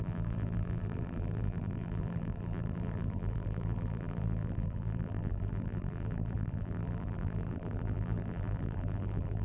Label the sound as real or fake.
fake